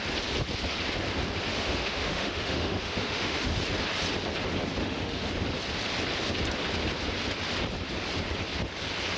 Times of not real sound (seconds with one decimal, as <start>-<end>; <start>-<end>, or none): 1.5-3.6; 4.8-5.3